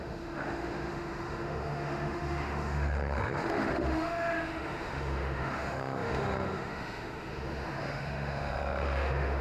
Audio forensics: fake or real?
fake